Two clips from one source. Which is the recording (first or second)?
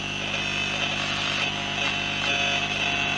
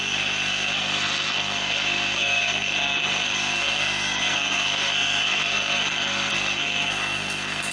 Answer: first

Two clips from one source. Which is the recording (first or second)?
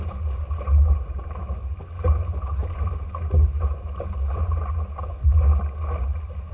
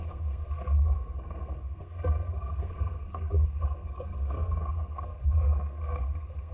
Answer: first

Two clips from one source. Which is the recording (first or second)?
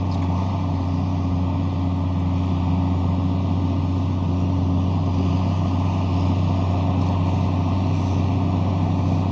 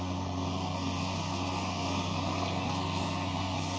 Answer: first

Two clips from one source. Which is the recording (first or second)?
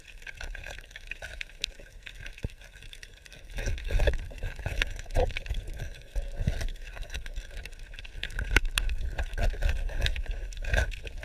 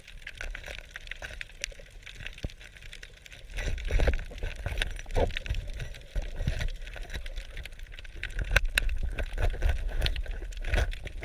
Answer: second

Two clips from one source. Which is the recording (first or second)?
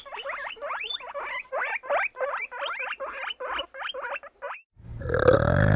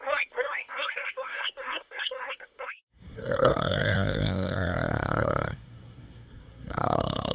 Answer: first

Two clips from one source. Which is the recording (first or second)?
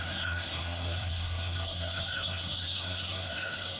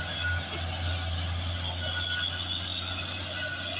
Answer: second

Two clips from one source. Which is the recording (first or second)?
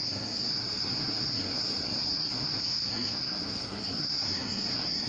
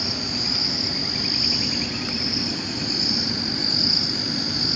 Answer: second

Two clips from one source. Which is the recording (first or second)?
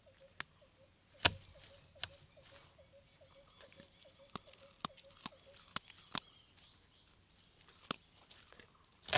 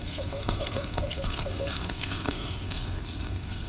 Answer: first